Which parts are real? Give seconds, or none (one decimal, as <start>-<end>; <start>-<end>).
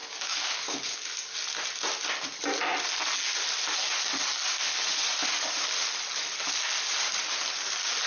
1.1-8.1